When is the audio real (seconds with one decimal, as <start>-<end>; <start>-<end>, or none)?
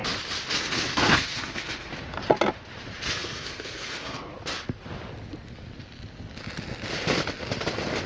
0.0-0.9; 1.9-3.1; 4.3-8.1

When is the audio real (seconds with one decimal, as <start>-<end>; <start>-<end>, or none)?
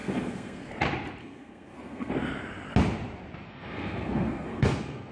0.7-1.2; 2.1-3.4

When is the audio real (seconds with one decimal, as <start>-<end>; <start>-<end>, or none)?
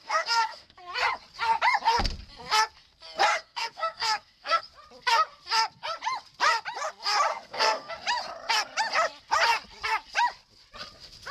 0.9-3.3; 4.6-7.3; 7.9-11.3